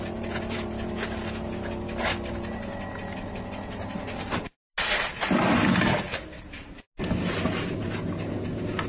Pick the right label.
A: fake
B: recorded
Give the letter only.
B